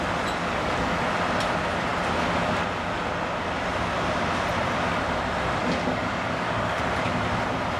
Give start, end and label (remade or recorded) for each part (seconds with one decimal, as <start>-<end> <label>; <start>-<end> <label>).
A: 0.0-0.4 recorded; 0.4-1.0 remade; 1.0-5.6 recorded; 5.6-6.8 remade; 6.8-7.8 recorded